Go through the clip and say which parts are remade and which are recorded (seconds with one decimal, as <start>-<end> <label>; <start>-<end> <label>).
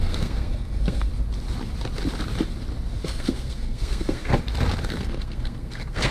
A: 0.0-1.1 remade; 1.1-3.0 recorded; 3.0-4.3 remade; 4.3-4.8 recorded; 4.8-6.1 remade